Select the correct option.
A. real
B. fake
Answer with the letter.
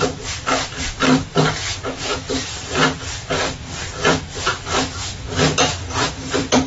B